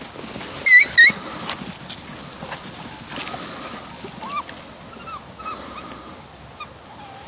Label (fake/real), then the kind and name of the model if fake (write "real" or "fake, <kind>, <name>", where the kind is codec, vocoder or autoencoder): real